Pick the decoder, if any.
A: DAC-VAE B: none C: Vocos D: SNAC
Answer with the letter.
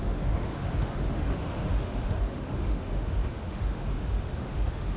A